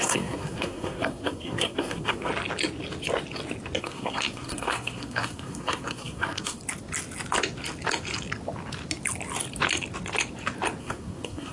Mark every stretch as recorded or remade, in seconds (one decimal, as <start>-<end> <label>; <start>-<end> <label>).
0.0-2.3 remade; 2.3-3.8 recorded; 3.8-6.6 remade; 6.6-10.8 recorded; 10.8-11.5 remade